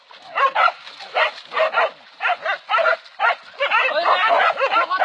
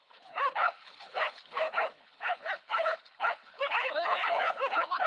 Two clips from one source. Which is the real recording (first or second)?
first